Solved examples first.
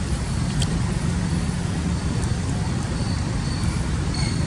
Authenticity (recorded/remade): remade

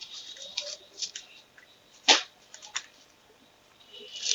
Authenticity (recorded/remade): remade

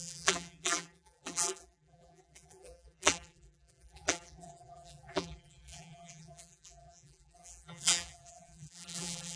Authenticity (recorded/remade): remade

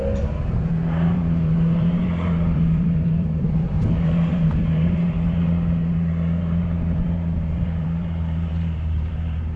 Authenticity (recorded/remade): remade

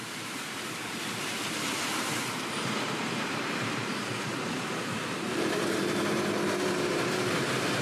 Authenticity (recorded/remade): remade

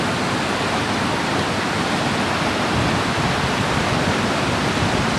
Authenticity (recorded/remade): recorded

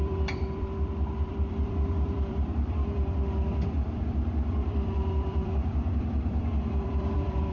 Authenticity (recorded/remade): remade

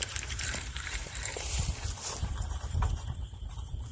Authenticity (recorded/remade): remade